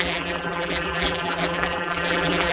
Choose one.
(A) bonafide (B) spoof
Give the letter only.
B